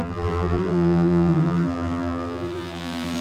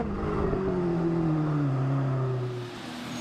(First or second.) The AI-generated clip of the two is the first